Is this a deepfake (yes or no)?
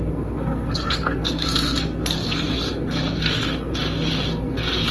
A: yes